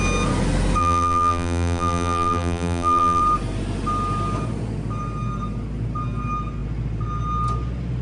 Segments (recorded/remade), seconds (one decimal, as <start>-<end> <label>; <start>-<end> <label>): 0.0-0.8 recorded; 0.8-3.2 remade; 3.2-8.0 recorded